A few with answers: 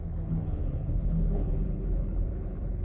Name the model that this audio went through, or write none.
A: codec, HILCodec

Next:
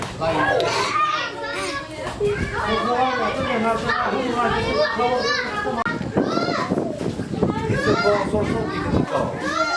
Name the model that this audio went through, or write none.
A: none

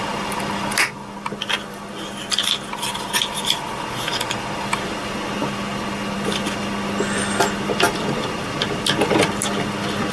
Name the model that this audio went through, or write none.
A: none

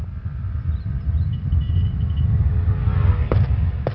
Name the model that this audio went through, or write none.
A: none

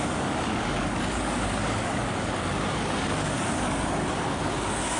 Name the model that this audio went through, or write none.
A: codec, DAC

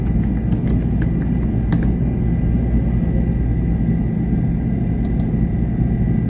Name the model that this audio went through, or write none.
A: none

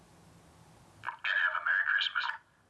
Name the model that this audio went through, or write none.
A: none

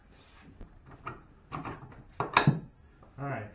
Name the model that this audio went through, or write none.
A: none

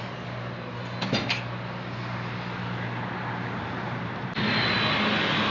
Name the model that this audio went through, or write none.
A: none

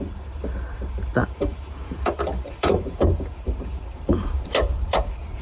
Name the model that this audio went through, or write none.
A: vocoder, BigVGAN v2